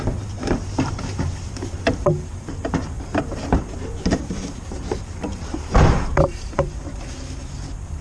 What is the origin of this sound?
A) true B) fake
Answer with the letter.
B